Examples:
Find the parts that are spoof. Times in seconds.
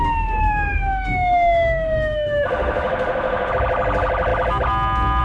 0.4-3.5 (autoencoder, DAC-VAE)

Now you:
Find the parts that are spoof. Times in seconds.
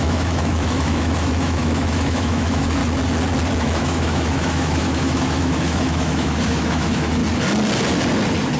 0.0-2.8 (autoencoder, DAC-VAE); 3.6-7.2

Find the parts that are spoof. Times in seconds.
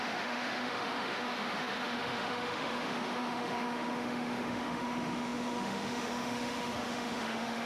0.0-7.7 (autoencoder, DAC-VAE)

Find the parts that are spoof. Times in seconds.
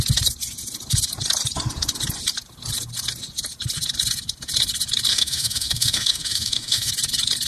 5.1-6.9 (autoencoder, DAC-VAE)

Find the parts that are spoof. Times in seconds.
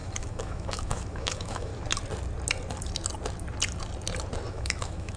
0.0-1.7 (autoencoder, DAC-VAE); 4.5-5.2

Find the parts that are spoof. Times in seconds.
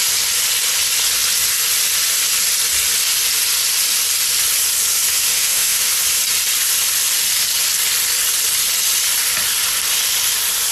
5.3-5.9 (autoencoder, DAC-VAE)